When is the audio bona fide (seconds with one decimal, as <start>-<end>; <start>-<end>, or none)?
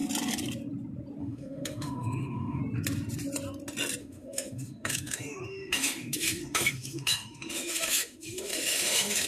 0.0-1.2; 2.6-4.0